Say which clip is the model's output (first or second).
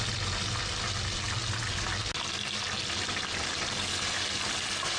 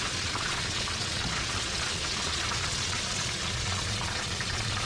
second